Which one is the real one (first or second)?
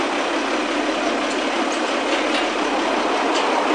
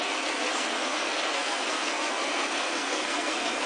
first